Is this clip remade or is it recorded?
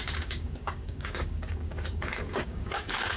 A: remade